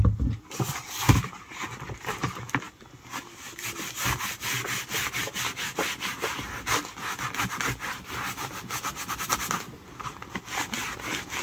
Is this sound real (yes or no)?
yes